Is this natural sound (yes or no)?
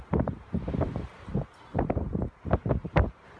no